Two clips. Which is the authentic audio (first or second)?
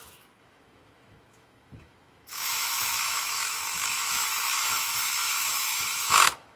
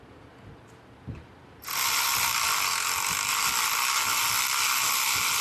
second